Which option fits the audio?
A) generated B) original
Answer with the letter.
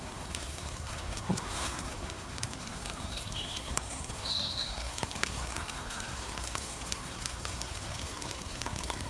A